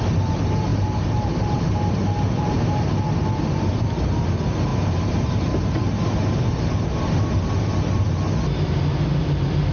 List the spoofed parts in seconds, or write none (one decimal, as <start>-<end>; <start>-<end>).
0.7-3.0; 4.7-6.3